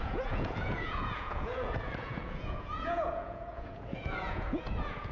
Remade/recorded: remade